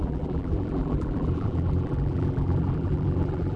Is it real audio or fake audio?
fake